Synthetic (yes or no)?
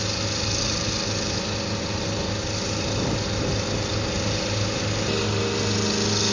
no